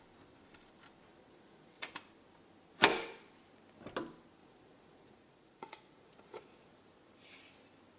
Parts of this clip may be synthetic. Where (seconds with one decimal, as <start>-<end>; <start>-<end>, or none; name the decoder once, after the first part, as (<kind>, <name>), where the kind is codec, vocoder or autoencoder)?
1.1-1.9 (vocoder, Vocos); 4.4-6.8